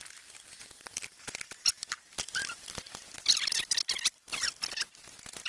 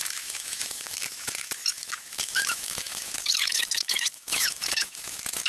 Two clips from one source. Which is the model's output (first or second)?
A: second